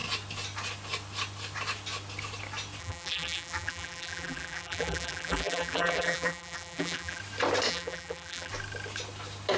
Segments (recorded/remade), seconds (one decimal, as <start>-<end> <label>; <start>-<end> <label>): 0.0-2.8 recorded; 2.8-7.2 remade; 7.2-7.7 recorded; 7.7-8.5 remade; 8.5-9.6 recorded